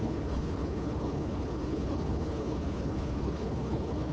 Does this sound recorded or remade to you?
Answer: remade